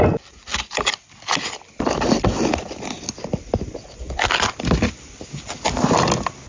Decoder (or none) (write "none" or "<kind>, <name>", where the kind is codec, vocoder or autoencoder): none